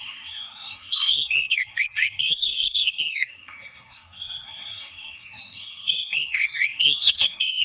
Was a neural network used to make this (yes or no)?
yes